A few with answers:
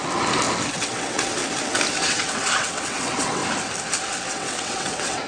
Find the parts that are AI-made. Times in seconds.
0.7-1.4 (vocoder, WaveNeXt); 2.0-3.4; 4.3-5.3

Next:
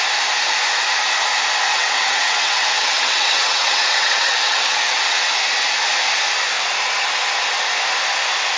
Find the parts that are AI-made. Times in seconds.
1.7-5.3 (vocoder, WaveNeXt)

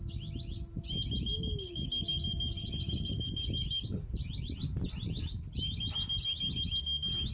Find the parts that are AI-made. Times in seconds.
none

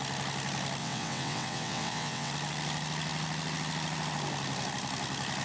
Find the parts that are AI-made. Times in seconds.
0.8-2.3 (vocoder, WaveNeXt)

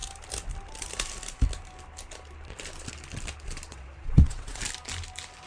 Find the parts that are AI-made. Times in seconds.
3.7-4.6 (vocoder, WaveNeXt)

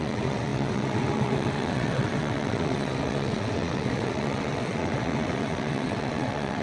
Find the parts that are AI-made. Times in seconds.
0.0-6.6 (vocoder, WaveNeXt)

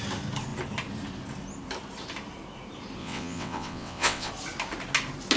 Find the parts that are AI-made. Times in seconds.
3.0-4.3 (vocoder, WaveNeXt)

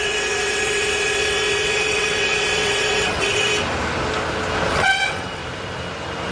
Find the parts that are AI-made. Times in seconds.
0.0-3.5 (vocoder, WaveNeXt); 4.7-5.4